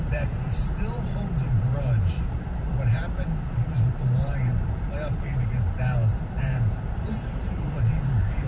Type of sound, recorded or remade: remade